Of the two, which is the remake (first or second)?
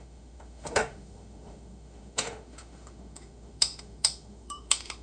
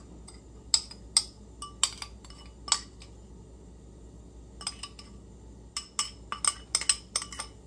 first